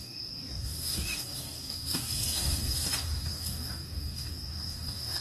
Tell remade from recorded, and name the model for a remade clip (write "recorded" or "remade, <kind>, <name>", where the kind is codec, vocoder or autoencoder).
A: remade, codec, DAC